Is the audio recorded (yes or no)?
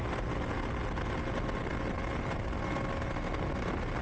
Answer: yes